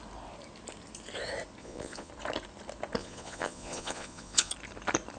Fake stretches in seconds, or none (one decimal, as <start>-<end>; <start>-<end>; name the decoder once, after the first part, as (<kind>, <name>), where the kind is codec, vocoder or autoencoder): 1.6-2.1 (vocoder, Vocos); 3.0-4.5